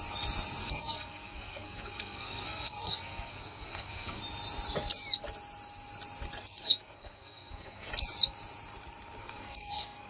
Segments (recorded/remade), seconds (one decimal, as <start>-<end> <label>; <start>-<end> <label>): 0.0-0.6 recorded; 0.6-4.2 remade; 4.2-6.4 recorded; 6.4-7.9 remade; 7.9-9.2 recorded; 9.2-10.1 remade